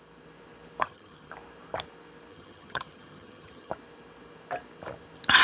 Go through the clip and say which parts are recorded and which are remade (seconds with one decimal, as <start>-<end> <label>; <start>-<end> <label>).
0.0-0.8 recorded; 0.8-1.3 remade; 1.3-2.3 recorded; 2.3-3.7 remade; 3.7-5.4 recorded